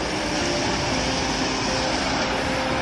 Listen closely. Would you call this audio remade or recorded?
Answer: recorded